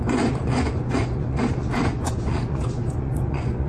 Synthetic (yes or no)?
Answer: yes